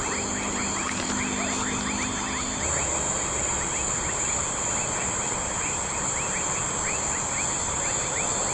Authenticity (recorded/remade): recorded